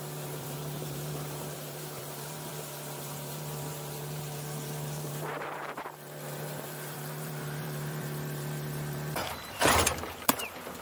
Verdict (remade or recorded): remade